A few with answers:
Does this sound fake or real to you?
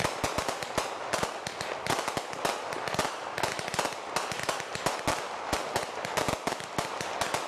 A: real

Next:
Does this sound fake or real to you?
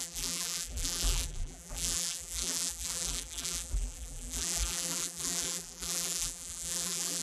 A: fake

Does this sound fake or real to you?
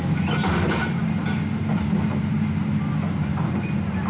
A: real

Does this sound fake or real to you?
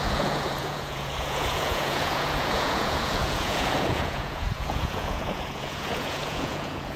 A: fake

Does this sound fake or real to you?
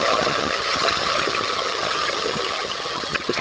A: fake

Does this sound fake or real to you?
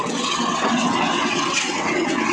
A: fake